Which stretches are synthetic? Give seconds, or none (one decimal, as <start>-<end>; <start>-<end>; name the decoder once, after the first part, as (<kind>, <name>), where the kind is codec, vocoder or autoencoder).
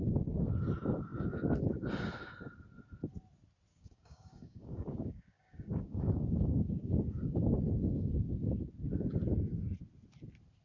3.7-7.6 (codec, DAC)